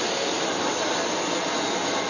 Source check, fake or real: real